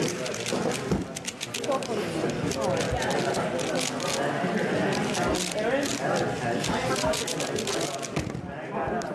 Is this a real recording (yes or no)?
yes